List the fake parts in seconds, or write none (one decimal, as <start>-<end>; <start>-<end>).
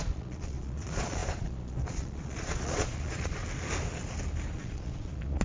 0.0-3.4; 4.5-5.4